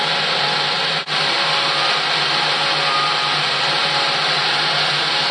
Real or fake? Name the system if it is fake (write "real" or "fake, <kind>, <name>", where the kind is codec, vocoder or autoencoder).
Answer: real